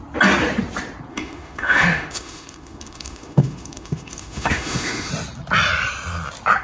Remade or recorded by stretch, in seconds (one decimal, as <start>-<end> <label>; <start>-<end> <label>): 0.0-1.1 recorded; 1.1-5.1 remade; 5.1-6.6 recorded